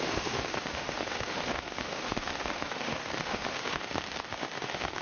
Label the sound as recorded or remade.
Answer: remade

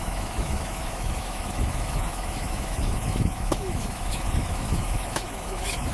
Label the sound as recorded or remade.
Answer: remade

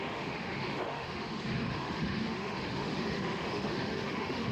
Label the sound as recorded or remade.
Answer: remade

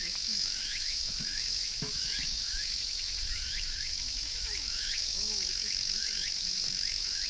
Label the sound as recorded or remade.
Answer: remade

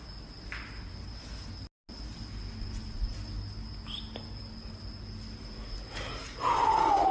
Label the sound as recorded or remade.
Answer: recorded